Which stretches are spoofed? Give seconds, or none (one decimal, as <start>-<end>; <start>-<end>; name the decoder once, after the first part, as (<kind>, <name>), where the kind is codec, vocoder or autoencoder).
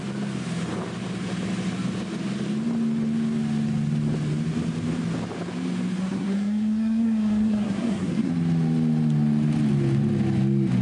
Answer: 6.0-8.3 (codec, SNAC)